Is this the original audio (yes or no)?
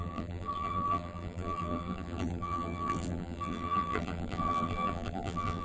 no